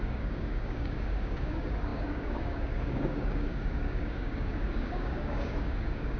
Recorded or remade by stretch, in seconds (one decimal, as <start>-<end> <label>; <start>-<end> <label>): 0.0-6.2 remade